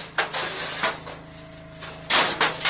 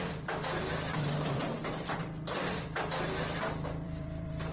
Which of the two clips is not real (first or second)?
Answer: second